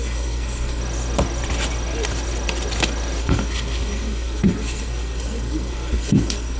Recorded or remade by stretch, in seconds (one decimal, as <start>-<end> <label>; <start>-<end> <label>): 0.0-0.8 remade; 0.8-3.2 recorded; 3.2-6.6 remade